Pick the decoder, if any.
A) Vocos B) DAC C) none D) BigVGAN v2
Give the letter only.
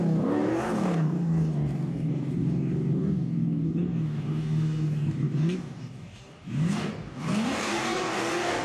B